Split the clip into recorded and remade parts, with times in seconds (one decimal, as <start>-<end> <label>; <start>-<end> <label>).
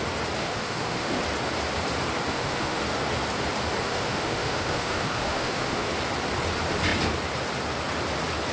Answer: 0.0-0.4 recorded; 0.4-1.2 remade; 1.2-2.3 recorded; 2.3-2.8 remade; 2.8-3.8 recorded; 3.8-5.9 remade; 5.9-8.5 recorded